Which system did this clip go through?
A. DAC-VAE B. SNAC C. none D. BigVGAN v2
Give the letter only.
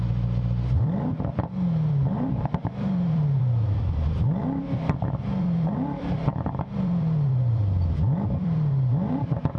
D